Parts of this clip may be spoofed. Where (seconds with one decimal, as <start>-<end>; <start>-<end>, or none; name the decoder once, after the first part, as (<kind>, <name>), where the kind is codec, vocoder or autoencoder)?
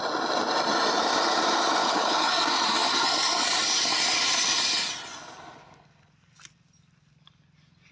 1.8-2.3 (codec, HILCodec)